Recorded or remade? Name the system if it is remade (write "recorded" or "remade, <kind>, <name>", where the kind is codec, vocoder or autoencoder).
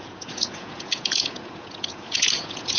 remade, vocoder, Vocos